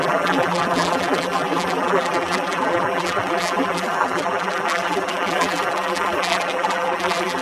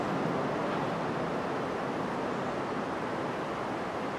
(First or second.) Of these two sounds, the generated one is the first